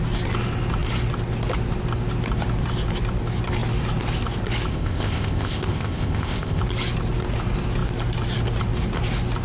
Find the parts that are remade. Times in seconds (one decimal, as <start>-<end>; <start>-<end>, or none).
4.7-6.6